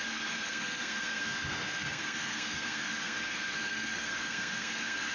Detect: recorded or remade remade